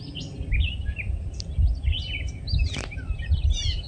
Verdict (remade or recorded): recorded